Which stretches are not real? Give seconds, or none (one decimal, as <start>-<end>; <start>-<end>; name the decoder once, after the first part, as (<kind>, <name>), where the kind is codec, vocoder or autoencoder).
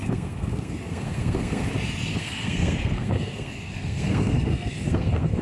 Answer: 0.0-1.7 (codec, SNAC); 2.1-5.4